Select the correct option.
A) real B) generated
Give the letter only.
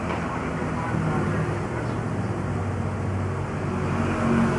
A